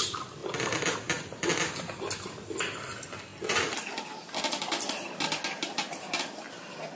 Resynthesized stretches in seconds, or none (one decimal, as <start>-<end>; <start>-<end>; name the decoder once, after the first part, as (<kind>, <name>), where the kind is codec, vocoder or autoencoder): none